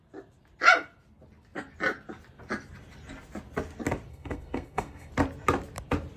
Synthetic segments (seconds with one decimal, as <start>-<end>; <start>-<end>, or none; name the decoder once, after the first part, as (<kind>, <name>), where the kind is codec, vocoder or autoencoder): 4.1-5.1 (codec, SNAC)